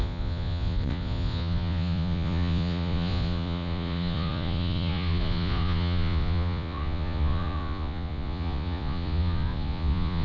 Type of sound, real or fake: fake